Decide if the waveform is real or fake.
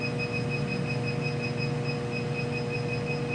real